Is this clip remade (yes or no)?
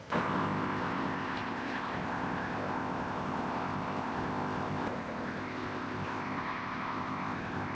yes